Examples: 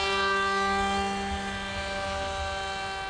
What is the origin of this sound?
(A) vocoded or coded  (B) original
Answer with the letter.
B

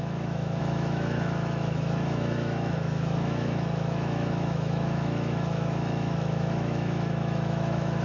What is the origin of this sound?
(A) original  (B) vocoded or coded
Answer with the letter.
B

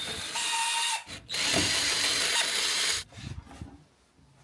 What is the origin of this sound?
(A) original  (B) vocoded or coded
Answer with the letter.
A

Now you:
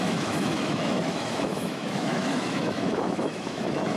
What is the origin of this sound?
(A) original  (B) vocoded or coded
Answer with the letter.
B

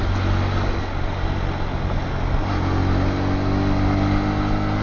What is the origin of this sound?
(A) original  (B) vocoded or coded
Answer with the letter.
A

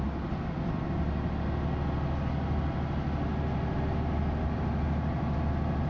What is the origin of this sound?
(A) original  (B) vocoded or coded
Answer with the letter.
A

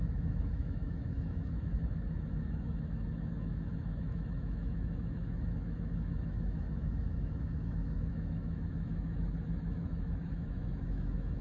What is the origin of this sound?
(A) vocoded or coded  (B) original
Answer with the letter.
A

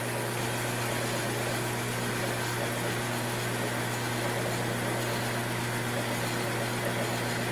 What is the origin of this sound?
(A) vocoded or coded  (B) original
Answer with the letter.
B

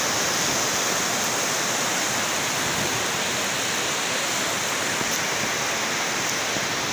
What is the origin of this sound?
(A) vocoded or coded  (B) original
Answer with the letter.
B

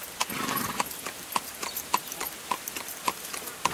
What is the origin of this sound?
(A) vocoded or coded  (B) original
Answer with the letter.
B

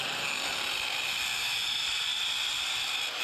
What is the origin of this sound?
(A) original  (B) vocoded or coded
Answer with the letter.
A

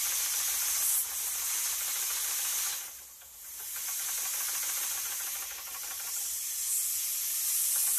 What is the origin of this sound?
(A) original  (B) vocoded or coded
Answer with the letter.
A